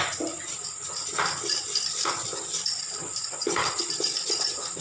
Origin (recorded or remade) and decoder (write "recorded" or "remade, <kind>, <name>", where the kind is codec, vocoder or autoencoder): recorded